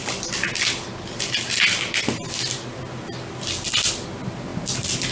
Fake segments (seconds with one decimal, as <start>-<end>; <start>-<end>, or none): none